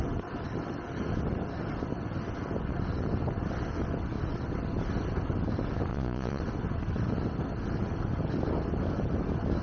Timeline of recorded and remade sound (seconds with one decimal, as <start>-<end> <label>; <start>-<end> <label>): 0.0-5.9 recorded; 5.9-6.4 remade; 6.4-9.6 recorded